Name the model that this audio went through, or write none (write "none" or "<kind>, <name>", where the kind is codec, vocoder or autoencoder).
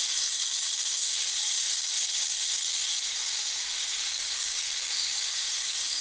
codec, DAC